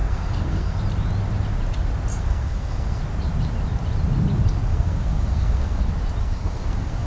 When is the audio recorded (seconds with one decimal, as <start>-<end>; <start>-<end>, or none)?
0.8-2.1; 3.0-4.7; 5.8-6.2